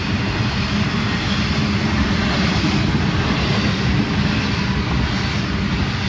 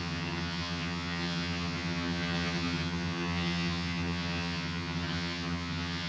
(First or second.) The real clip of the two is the first